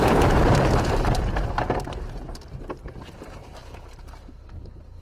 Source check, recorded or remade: remade